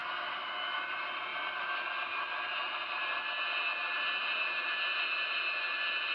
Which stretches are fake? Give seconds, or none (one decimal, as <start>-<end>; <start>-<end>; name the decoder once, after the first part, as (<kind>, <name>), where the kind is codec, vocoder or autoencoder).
none

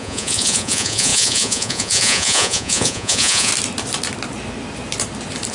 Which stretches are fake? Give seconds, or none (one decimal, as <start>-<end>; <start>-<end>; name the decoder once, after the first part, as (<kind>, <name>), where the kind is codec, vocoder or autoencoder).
0.0-3.5 (vocoder, Vocos)

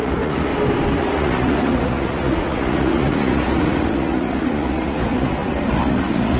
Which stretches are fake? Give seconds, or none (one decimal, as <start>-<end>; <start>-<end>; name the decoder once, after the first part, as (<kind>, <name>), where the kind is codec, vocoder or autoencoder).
0.0-0.5 (vocoder, Vocos); 1.0-6.4

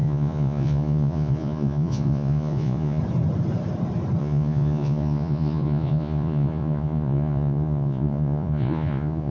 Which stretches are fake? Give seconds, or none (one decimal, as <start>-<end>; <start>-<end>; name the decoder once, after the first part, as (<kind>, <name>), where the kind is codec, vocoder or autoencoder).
0.0-3.0 (vocoder, Vocos); 4.2-9.3

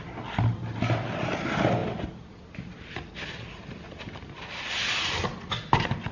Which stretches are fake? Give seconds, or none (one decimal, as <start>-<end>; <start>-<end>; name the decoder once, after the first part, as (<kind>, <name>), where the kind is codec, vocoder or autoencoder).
none

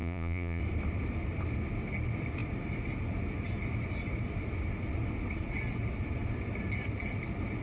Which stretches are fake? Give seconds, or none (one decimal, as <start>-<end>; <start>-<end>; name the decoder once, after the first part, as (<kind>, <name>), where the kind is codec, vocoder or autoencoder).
0.0-0.6 (vocoder, Vocos)

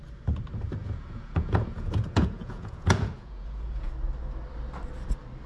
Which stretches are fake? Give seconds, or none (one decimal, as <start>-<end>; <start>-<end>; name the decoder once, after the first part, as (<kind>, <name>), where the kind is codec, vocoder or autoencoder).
0.8-3.9 (vocoder, Vocos)